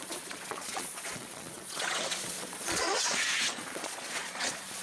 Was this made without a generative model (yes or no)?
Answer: no